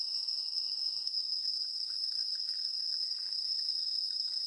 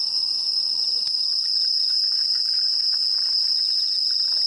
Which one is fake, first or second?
first